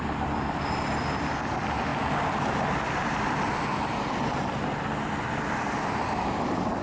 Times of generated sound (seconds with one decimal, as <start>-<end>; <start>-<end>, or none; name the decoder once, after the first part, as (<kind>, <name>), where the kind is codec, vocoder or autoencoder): none

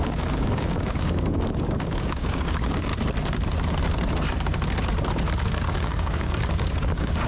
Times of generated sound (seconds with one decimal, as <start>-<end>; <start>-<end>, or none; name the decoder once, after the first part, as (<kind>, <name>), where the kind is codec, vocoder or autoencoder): 0.0-2.9 (codec, DAC); 5.3-7.3

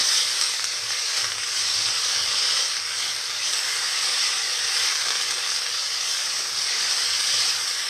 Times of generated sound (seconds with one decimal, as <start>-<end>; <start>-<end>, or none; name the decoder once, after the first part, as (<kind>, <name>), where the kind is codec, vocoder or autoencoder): 0.0-7.9 (codec, DAC)